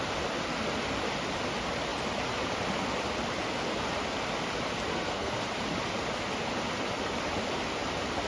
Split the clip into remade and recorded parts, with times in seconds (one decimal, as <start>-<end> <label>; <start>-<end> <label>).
0.0-4.9 recorded; 4.9-5.4 remade; 5.4-8.3 recorded